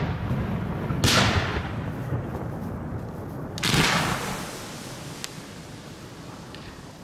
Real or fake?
real